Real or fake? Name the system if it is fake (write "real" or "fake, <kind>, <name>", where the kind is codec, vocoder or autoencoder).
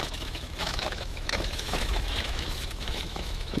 fake, autoencoder, DAC-VAE